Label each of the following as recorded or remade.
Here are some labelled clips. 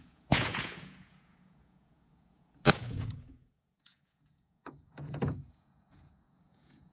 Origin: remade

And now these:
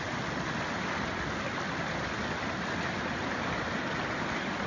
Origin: recorded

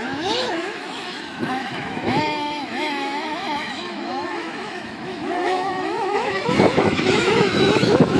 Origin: remade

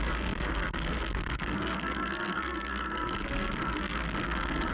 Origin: remade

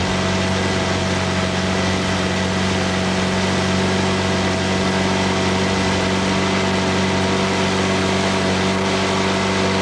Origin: recorded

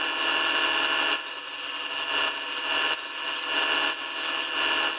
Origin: recorded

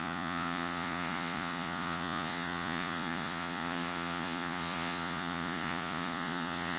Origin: remade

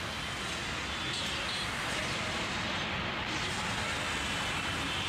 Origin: recorded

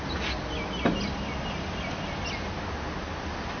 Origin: recorded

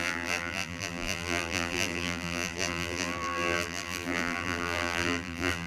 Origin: remade